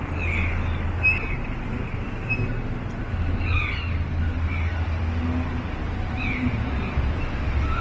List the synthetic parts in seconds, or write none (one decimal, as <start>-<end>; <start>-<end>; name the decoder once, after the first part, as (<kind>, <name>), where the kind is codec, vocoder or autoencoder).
5.8-6.9 (vocoder, BigVGAN v2)